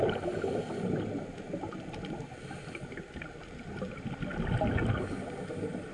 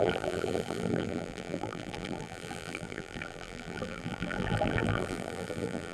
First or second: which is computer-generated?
second